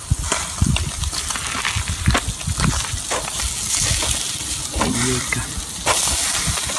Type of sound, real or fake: real